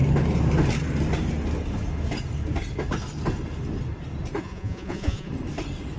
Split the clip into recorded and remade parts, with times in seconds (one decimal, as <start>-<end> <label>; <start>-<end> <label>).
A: 0.0-4.4 recorded; 4.4-5.3 remade; 5.3-6.0 recorded